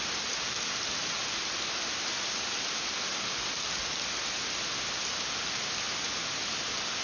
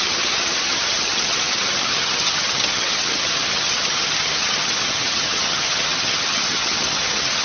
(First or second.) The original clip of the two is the first